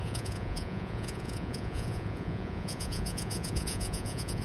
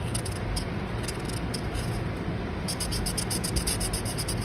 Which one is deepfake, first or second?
first